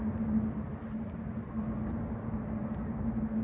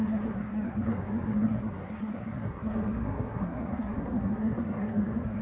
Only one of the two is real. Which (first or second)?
first